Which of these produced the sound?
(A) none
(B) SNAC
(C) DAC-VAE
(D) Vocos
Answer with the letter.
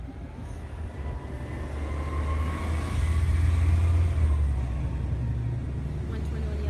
A